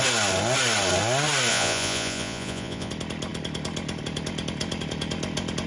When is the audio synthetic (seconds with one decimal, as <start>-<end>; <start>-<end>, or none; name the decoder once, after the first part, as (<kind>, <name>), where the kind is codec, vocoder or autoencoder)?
1.5-2.9 (vocoder, Vocos)